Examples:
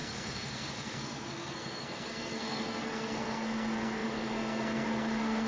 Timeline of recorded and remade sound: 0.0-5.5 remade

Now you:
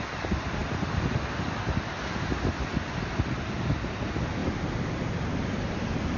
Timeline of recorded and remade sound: 0.0-4.4 recorded; 4.4-6.2 remade

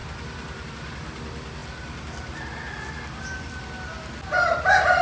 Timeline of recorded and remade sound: 0.0-5.0 recorded

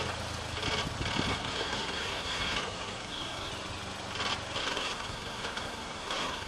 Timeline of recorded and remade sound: 0.0-1.3 recorded; 1.3-3.5 remade; 3.5-4.6 recorded; 4.6-6.5 remade